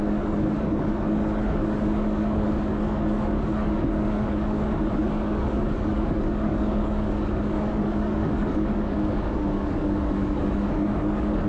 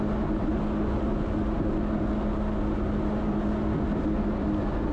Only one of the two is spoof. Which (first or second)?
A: first